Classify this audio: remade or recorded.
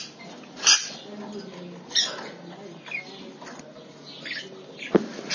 recorded